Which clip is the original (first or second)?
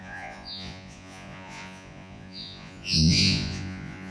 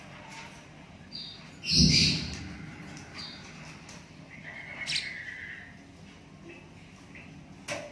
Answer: second